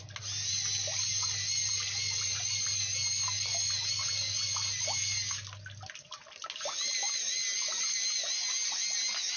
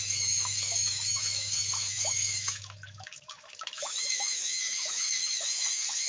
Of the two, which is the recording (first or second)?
first